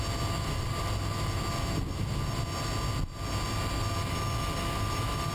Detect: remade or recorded recorded